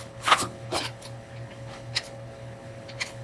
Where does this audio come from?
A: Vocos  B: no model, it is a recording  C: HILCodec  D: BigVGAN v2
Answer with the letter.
C